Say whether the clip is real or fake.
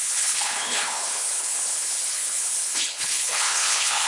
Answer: fake